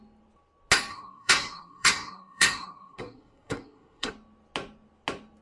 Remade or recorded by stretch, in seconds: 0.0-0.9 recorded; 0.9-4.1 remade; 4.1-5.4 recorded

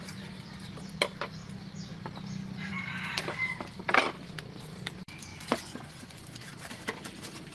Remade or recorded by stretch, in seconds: 0.0-5.3 recorded; 5.3-6.2 remade; 6.2-7.5 recorded

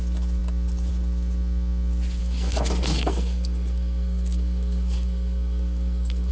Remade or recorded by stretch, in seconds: 0.0-2.2 recorded; 2.2-6.3 remade